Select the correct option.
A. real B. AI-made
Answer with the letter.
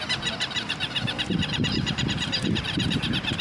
B